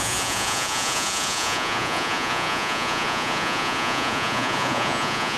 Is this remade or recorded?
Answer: remade